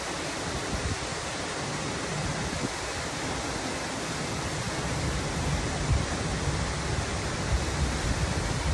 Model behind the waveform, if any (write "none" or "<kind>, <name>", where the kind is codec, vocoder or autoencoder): none